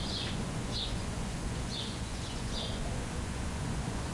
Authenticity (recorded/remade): remade